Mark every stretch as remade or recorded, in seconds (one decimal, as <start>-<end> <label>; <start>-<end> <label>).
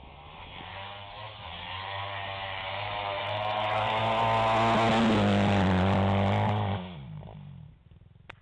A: 0.0-0.7 recorded; 0.7-4.0 remade; 4.0-8.4 recorded